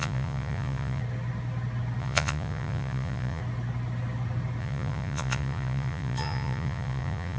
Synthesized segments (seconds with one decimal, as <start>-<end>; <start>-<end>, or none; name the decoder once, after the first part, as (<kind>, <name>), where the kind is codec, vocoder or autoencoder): 0.0-1.0 (vocoder, Vocos); 2.0-3.4; 4.6-7.4